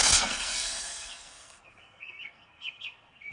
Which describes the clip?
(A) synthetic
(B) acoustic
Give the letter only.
A